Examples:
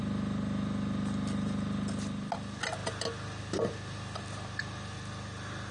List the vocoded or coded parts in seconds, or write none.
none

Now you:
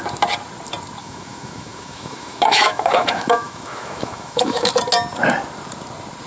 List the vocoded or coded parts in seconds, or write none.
1.0-4.7 (autoencoder, DAC-VAE)

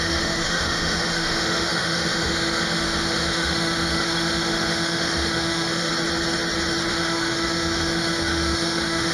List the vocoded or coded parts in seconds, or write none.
0.0-5.9 (autoencoder, DAC-VAE); 6.9-9.1

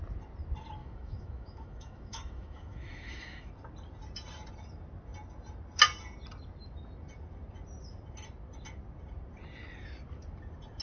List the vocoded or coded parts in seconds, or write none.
0.8-3.5 (autoencoder, DAC-VAE)

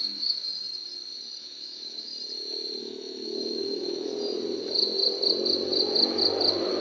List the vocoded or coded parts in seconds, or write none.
0.0-0.5 (autoencoder, DAC-VAE); 1.4-2.1; 2.8-4.1

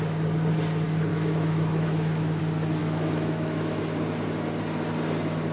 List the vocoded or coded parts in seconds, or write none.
1.1-2.4 (autoencoder, DAC-VAE); 2.8-3.8

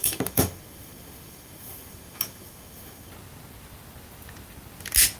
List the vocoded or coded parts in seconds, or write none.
0.0-3.1 (autoencoder, DAC-VAE)